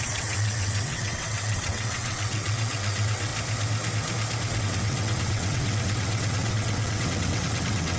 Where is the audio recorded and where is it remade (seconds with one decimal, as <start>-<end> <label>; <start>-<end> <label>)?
0.0-3.3 remade; 3.3-4.6 recorded; 4.6-8.0 remade